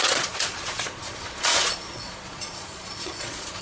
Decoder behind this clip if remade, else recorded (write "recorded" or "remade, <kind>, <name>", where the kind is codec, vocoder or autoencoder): remade, vocoder, Vocos